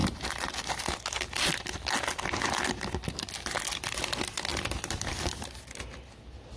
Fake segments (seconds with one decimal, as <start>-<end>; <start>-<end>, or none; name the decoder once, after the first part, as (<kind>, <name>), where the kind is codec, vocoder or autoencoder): 4.5-5.4 (vocoder, BigVGAN v2)